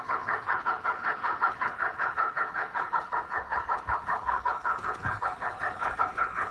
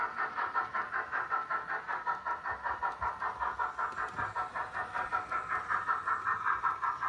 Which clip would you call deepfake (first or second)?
first